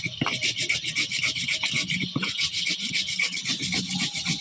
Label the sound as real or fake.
real